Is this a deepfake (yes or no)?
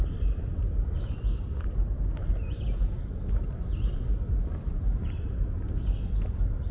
no